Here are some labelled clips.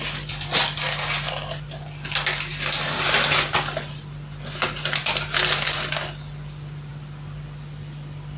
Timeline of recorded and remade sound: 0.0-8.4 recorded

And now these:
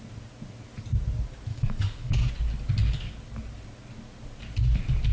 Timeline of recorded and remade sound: 0.0-1.5 recorded; 1.5-2.3 remade; 2.3-5.1 recorded

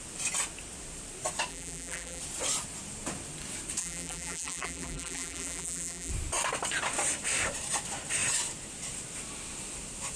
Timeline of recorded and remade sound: 0.0-1.5 recorded; 1.5-2.2 remade; 2.2-3.8 recorded; 3.8-6.1 remade; 6.1-10.2 recorded

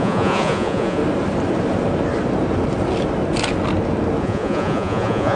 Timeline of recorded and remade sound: 0.0-1.0 remade; 1.0-4.2 recorded; 4.2-5.4 remade

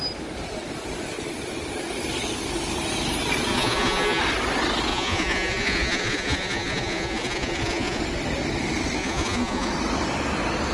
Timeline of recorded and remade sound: 0.0-3.5 recorded; 3.5-4.2 remade; 4.2-4.9 recorded; 4.9-8.0 remade; 8.0-9.0 recorded; 9.0-9.7 remade; 9.7-10.7 recorded

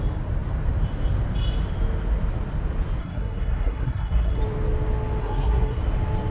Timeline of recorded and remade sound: 0.0-3.0 recorded; 3.0-4.4 remade; 4.4-5.2 recorded; 5.2-5.8 remade; 5.8-6.3 recorded

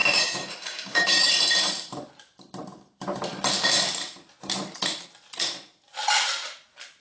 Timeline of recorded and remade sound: 0.0-1.3 remade; 1.3-7.0 recorded